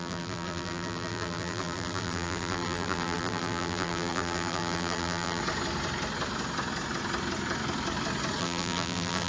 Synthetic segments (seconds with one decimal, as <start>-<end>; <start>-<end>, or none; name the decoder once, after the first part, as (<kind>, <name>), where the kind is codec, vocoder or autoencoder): 0.0-5.4 (vocoder, BigVGAN v2); 8.4-9.3